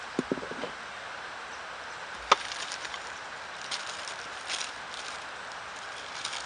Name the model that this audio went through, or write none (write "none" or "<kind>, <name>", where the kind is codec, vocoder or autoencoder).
none